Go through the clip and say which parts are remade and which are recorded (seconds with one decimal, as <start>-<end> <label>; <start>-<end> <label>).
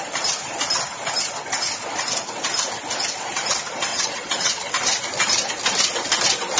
0.0-3.9 recorded; 3.9-4.7 remade; 4.7-6.6 recorded